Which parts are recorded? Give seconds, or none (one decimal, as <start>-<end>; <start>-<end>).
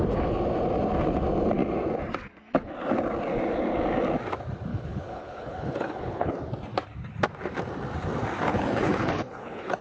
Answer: 0.0-4.7; 6.3-8.5